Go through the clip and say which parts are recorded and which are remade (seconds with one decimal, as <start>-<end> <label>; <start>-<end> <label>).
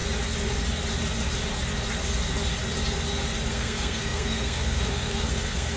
0.0-3.5 recorded; 3.5-5.8 remade